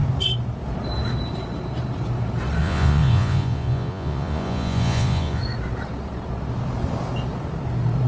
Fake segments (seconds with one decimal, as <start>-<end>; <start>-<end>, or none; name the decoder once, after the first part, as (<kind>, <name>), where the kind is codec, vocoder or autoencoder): 2.6-5.4 (vocoder, Vocos)